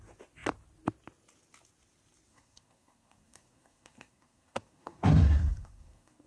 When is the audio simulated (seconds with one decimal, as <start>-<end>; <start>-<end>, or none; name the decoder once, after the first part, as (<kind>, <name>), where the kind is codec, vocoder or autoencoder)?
2.3-6.3 (codec, SNAC)